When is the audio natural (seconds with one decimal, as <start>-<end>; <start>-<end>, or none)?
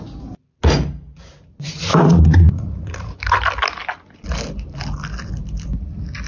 0.0-1.9; 3.2-6.3